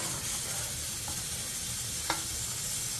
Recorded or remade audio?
recorded